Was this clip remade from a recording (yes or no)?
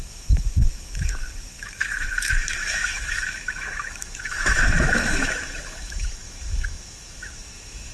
yes